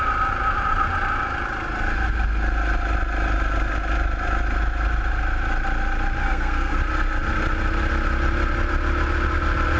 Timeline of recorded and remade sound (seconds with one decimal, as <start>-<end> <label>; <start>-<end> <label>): 0.0-6.2 recorded; 6.2-6.8 remade; 6.8-9.8 recorded